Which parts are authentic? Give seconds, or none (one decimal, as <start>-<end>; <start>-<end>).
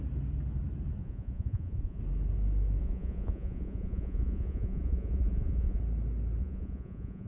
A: 0.0-1.0; 2.0-2.8; 5.8-6.4